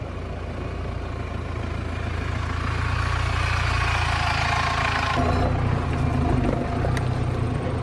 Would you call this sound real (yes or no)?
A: yes